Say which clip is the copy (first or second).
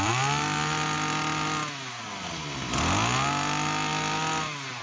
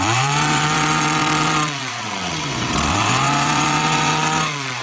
second